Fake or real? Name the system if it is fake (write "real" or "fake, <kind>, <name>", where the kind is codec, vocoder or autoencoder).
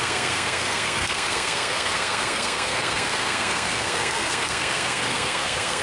fake, codec, SNAC